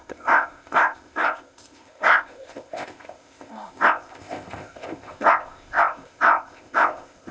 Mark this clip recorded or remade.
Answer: remade